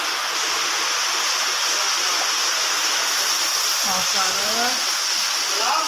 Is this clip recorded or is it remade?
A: recorded